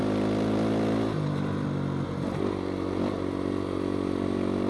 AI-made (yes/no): no